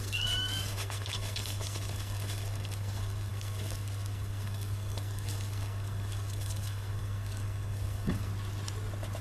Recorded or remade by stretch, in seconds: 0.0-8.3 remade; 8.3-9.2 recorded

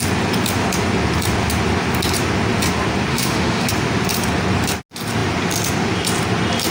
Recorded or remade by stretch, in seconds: 0.0-3.1 recorded; 3.1-3.7 remade; 3.7-6.7 recorded

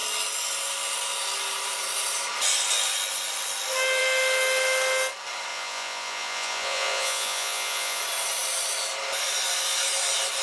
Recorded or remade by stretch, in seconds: 0.0-5.5 recorded; 5.5-8.0 remade; 8.0-10.4 recorded

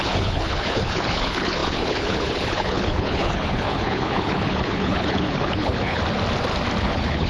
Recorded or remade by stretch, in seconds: 0.0-6.0 remade; 6.0-6.8 recorded; 6.8-7.3 remade

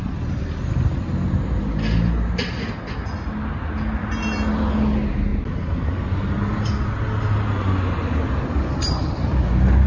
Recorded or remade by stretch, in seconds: 0.0-9.9 recorded

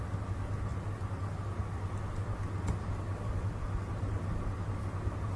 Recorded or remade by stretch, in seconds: 0.0-5.4 recorded

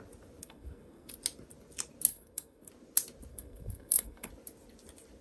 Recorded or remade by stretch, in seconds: 0.0-0.4 recorded; 0.4-1.1 remade; 1.1-2.1 recorded; 2.1-2.7 remade; 2.7-3.3 recorded; 3.3-4.3 remade; 4.3-5.2 recorded

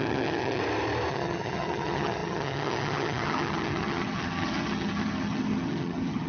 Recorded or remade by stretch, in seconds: 0.0-0.6 remade; 0.6-1.1 recorded; 1.1-6.3 remade